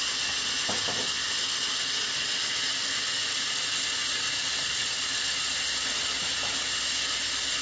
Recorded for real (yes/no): yes